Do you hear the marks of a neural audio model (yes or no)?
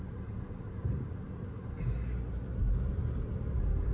no